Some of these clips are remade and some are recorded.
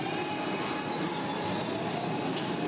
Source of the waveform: recorded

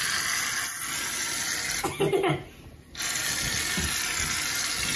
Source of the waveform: recorded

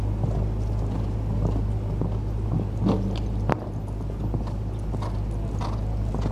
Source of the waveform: recorded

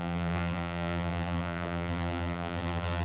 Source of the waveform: remade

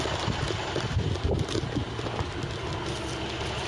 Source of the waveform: recorded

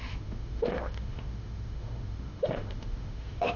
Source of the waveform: remade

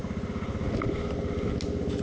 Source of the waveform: recorded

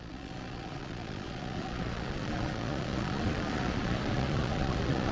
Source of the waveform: remade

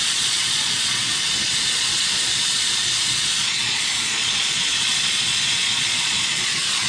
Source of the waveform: remade